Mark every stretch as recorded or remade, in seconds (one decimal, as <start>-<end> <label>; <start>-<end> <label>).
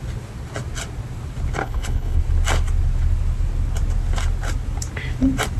0.0-1.6 recorded; 1.6-2.2 remade; 2.2-5.6 recorded